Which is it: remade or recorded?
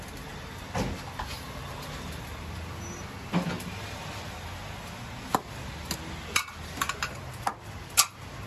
recorded